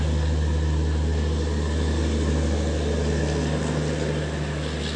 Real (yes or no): yes